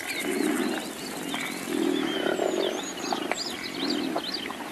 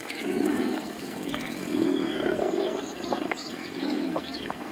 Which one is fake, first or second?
second